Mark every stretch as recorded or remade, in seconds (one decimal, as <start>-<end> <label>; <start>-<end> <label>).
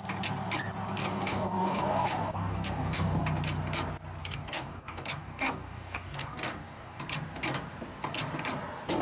0.0-1.0 recorded; 1.0-3.2 remade; 3.2-4.2 recorded; 4.2-7.0 remade; 7.0-9.0 recorded